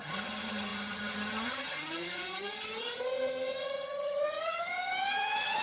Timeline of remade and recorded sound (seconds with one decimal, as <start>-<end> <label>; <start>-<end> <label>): 0.0-5.6 remade